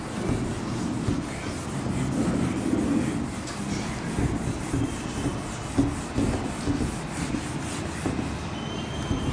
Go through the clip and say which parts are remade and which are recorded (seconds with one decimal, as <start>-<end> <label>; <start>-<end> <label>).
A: 0.0-9.3 recorded